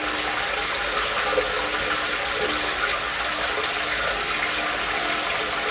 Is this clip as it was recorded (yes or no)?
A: yes